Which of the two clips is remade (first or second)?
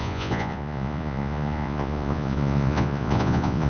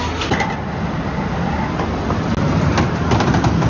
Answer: first